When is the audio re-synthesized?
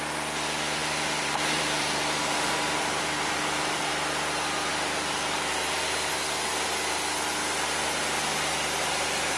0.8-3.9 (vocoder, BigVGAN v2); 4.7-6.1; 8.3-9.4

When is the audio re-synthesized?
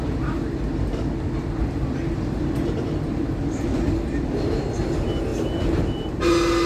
1.6-4.6 (vocoder, BigVGAN v2); 5.3-6.2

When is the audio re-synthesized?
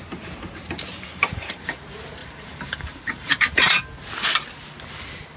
1.1-1.8 (vocoder, BigVGAN v2); 2.2-3.8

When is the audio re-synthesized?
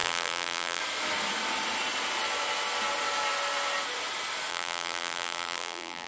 0.0-0.8 (vocoder, BigVGAN v2); 4.5-6.1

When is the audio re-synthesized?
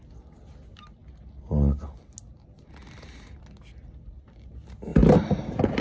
4.9-5.8 (vocoder, BigVGAN v2)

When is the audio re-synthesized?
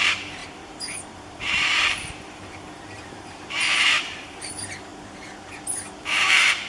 0.0-4.9 (vocoder, BigVGAN v2); 6.0-6.7